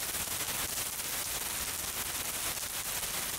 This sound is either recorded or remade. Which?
recorded